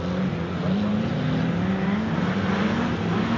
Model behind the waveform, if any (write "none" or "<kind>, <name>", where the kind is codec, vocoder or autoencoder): none